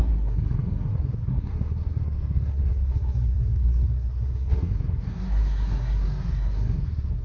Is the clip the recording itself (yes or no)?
no